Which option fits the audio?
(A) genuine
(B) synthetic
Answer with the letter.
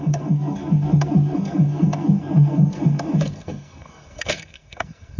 B